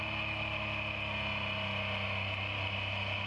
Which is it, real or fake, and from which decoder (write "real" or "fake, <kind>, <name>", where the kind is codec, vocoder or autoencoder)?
real